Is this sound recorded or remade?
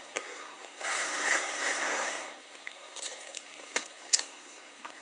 remade